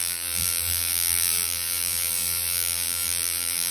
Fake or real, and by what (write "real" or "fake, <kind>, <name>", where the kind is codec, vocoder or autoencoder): fake, vocoder, BigVGAN v2